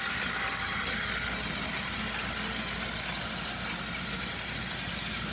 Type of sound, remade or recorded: recorded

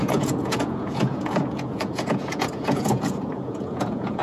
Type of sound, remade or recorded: remade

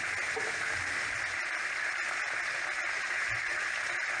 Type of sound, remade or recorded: recorded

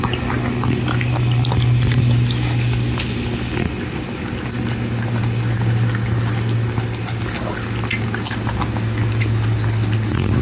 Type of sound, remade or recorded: recorded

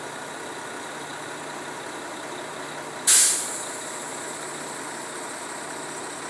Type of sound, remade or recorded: recorded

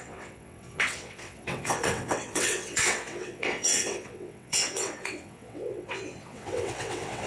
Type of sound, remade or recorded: remade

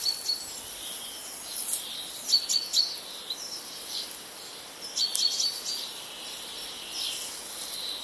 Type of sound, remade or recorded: recorded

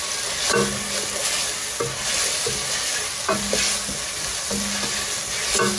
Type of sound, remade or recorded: recorded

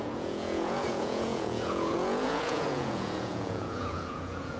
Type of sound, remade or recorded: remade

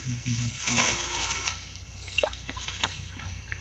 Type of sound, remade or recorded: remade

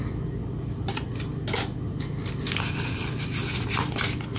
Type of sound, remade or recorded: recorded